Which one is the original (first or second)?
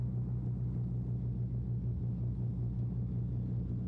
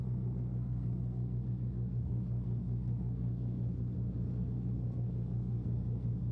first